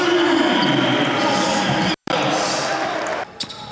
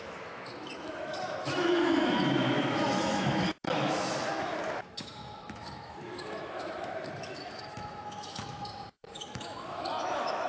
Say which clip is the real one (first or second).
first